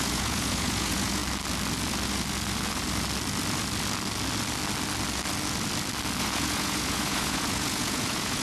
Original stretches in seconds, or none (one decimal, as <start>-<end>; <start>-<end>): 1.2-6.2